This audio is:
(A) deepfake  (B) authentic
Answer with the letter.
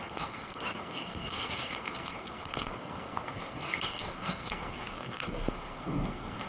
A